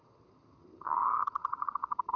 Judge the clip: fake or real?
fake